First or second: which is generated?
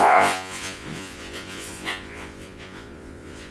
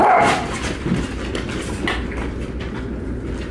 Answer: first